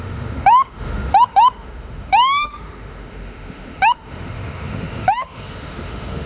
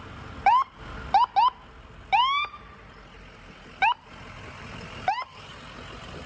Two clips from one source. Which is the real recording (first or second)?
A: second